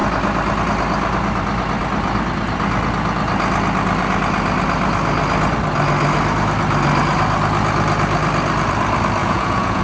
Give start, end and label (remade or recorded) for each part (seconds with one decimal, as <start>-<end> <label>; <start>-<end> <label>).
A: 0.0-9.2 recorded; 9.2-9.8 remade